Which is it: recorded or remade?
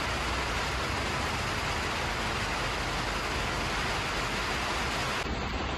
recorded